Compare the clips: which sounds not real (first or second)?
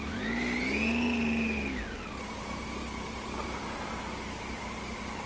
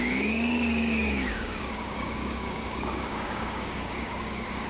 second